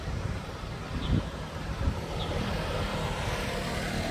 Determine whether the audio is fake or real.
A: real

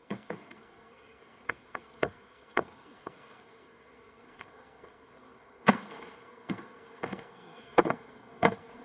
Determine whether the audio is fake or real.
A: fake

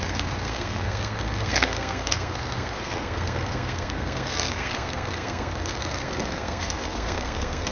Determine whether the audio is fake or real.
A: fake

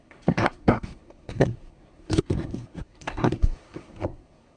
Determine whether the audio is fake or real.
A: fake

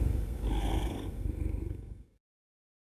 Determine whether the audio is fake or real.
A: fake